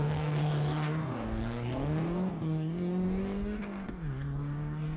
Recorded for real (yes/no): no